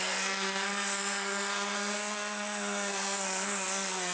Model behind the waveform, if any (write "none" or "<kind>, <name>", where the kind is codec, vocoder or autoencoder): codec, SNAC